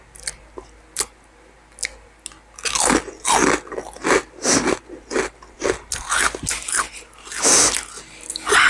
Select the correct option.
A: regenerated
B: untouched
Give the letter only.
B